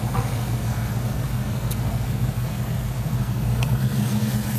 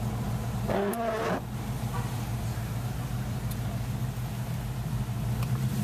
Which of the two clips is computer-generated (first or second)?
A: first